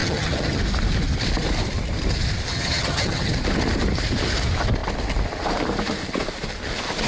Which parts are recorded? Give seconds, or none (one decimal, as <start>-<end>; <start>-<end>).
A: 0.6-2.5; 3.3-7.1